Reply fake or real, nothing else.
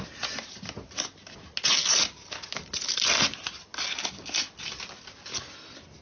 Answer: real